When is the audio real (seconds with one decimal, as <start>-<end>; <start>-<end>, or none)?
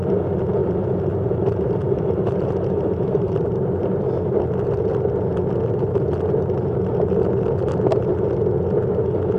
0.0-0.6; 4.0-9.4